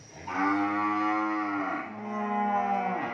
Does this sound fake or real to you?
real